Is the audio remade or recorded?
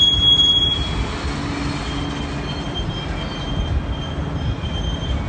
recorded